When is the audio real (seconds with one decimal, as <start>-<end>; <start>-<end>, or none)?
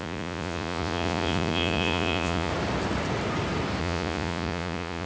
2.5-3.8